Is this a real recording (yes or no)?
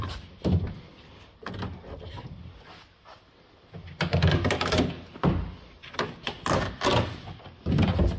yes